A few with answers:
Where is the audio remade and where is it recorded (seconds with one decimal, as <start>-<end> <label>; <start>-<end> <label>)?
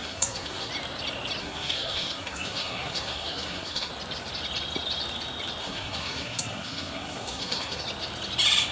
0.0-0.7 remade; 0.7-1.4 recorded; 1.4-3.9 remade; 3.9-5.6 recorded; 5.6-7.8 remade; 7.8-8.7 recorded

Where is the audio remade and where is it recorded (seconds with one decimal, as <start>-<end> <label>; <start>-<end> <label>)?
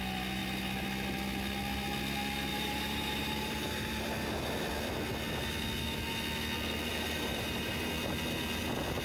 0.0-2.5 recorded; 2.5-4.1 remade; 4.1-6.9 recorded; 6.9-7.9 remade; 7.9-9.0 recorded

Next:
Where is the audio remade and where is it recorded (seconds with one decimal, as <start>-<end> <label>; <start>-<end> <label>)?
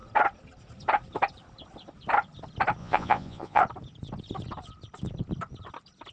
0.0-2.8 recorded; 2.8-3.6 remade; 3.6-6.1 recorded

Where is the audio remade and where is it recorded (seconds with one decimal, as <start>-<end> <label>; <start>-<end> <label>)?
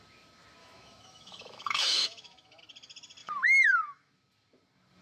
0.0-0.6 recorded; 0.6-2.6 remade; 2.6-3.2 recorded; 3.2-4.1 remade; 4.1-5.0 recorded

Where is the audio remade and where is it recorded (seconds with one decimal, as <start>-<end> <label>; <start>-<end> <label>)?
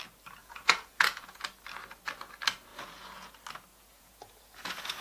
0.0-0.4 recorded; 0.4-1.4 remade; 1.4-2.7 recorded; 2.7-3.3 remade; 3.3-3.7 recorded; 3.7-5.0 remade